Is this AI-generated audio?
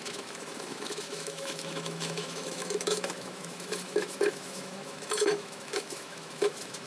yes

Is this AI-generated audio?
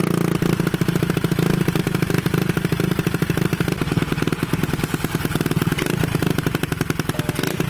no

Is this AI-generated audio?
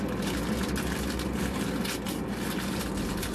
no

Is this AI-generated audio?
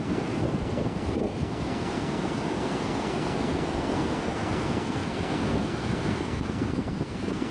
yes